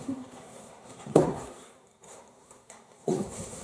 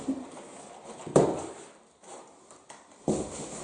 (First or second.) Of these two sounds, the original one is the second